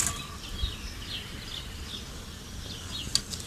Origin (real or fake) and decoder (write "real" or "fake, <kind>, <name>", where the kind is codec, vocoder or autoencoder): real